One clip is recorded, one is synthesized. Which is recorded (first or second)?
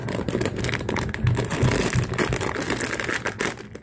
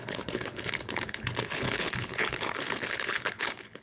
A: first